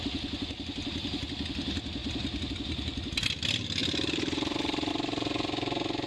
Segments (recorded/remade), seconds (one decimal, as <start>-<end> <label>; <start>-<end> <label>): 0.0-3.8 recorded; 3.8-4.9 remade; 4.9-6.1 recorded